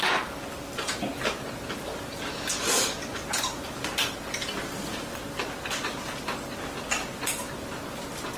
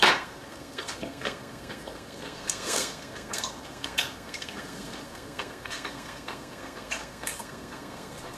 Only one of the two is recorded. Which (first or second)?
first